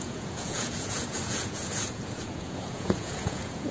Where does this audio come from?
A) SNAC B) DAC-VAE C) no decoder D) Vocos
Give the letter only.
D